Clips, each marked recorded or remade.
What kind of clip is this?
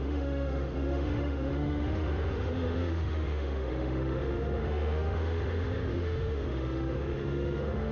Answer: remade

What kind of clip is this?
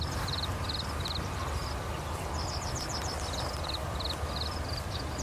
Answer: recorded